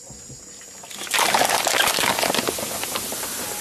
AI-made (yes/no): no